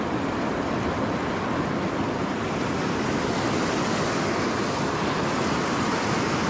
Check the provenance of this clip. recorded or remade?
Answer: recorded